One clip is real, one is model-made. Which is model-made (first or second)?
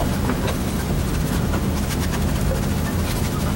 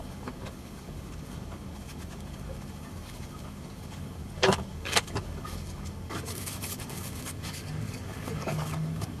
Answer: second